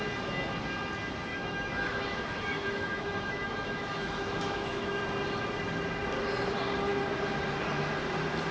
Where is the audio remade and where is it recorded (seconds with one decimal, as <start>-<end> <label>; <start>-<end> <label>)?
0.0-1.3 recorded; 1.3-5.0 remade; 5.0-8.5 recorded